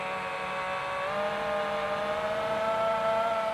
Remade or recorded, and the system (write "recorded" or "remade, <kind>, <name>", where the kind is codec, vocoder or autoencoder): recorded